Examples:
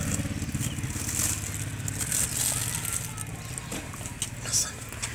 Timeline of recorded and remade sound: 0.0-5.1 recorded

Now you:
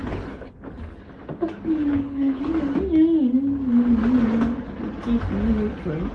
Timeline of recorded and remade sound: 0.0-0.5 remade; 0.5-1.8 recorded; 1.8-2.4 remade; 2.4-6.1 recorded

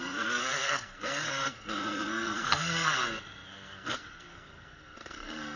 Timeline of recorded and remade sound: 0.0-5.6 remade

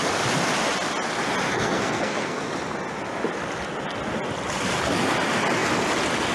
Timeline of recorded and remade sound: 0.0-1.5 recorded; 1.5-2.4 remade; 2.4-6.3 recorded